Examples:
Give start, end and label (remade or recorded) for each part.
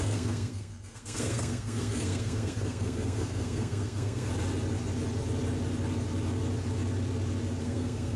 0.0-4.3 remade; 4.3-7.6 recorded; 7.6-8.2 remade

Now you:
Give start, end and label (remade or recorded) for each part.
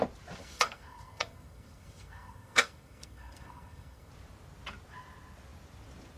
0.0-0.4 recorded; 0.4-4.1 remade; 4.1-6.2 recorded